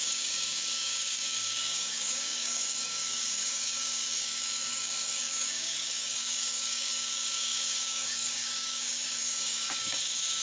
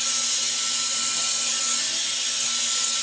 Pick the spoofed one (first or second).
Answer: first